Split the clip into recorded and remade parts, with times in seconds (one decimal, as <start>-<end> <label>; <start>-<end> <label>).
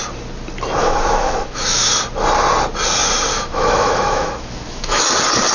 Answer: 0.0-0.8 recorded; 0.8-1.9 remade; 1.9-3.3 recorded; 3.3-5.0 remade; 5.0-5.5 recorded